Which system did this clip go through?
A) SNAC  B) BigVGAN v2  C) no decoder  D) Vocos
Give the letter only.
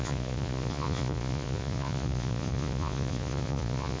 D